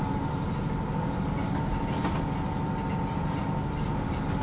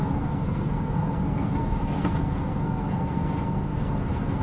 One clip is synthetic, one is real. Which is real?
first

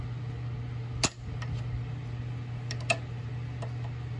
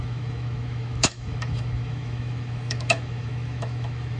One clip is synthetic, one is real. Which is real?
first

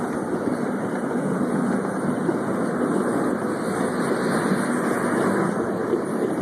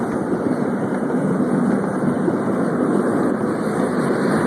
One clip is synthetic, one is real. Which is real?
first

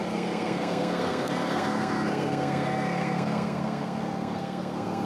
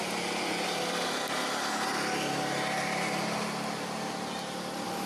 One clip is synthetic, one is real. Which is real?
second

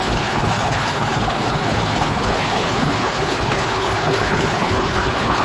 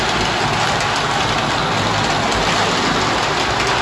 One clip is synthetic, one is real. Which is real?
second